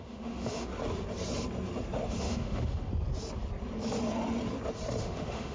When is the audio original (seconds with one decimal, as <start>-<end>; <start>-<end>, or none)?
0.7-2.2; 2.9-5.0